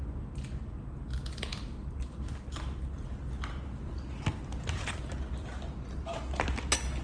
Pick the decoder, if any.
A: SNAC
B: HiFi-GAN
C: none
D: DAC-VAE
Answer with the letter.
C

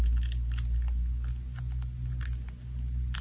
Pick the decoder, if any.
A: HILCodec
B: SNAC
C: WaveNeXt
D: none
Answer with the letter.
D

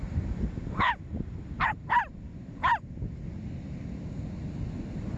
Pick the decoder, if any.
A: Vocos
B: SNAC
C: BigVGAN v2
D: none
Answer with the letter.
D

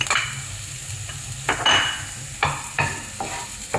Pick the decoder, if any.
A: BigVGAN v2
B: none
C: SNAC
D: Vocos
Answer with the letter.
B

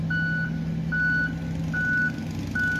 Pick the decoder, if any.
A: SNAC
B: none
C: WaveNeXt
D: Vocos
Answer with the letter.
B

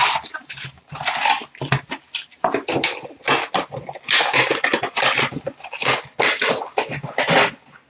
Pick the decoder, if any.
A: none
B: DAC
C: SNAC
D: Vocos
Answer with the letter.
A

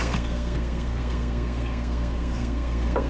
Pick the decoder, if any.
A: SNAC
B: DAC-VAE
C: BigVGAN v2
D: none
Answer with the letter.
A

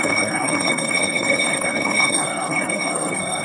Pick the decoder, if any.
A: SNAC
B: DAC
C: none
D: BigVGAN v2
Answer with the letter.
A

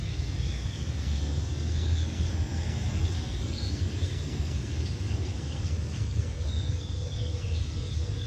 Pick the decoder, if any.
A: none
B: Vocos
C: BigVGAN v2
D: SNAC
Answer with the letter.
D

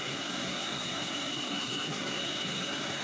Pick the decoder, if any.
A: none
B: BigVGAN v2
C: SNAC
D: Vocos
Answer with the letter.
C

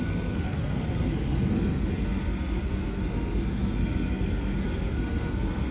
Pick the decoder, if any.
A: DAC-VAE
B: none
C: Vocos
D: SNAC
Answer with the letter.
D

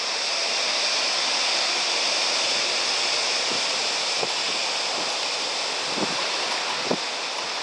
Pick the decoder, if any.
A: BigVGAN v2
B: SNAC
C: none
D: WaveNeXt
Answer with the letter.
C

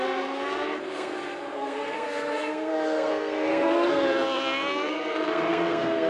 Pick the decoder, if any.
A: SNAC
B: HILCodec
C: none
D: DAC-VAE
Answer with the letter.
A